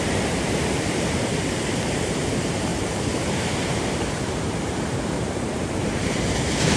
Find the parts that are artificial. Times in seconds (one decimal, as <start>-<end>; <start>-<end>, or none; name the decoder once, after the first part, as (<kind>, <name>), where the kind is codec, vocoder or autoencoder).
0.0-6.8 (vocoder, BigVGAN v2)